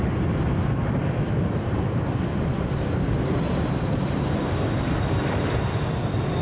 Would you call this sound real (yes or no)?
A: yes